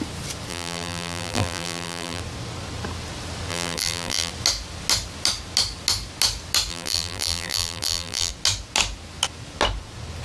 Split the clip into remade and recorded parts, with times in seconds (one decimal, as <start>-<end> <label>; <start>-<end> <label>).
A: 0.0-0.5 recorded; 0.5-2.2 remade; 2.2-3.5 recorded; 3.5-4.3 remade; 4.3-6.7 recorded; 6.7-8.3 remade; 8.3-10.2 recorded

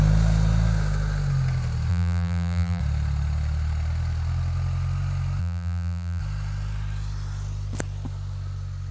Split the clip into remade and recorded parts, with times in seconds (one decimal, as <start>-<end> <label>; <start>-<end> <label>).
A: 0.0-1.9 recorded; 1.9-2.8 remade; 2.8-5.4 recorded; 5.4-6.2 remade; 6.2-8.9 recorded

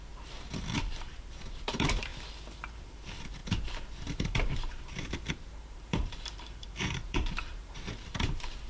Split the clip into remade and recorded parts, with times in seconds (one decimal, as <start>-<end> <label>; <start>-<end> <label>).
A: 0.0-2.1 remade; 2.1-2.7 recorded; 2.7-8.7 remade

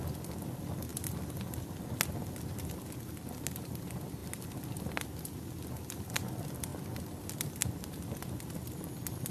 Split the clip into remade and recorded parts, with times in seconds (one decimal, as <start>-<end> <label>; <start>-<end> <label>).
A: 0.0-9.3 recorded

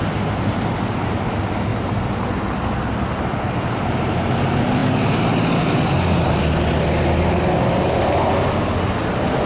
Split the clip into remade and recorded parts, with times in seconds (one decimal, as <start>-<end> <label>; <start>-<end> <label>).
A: 0.0-1.7 recorded; 1.7-2.4 remade; 2.4-9.5 recorded

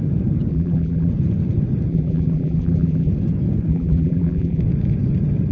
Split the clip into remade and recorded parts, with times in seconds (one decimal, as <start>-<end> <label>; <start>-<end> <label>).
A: 0.0-0.5 recorded; 0.5-1.1 remade; 1.1-1.9 recorded; 1.9-3.1 remade; 3.1-3.7 recorded; 3.7-4.6 remade; 4.6-5.5 recorded

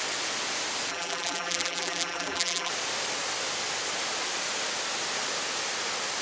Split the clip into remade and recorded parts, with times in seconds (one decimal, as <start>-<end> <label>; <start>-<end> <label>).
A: 0.0-0.9 recorded; 0.9-2.7 remade; 2.7-6.2 recorded